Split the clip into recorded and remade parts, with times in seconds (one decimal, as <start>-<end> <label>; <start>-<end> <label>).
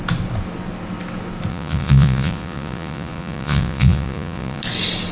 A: 0.0-1.5 recorded; 1.5-4.6 remade; 4.6-5.1 recorded